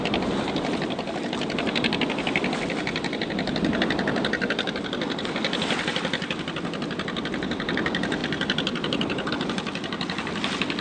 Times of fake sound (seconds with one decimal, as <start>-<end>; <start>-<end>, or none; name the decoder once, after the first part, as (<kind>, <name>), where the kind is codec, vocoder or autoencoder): none